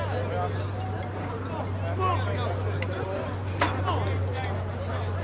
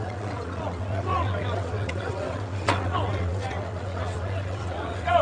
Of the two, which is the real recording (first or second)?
first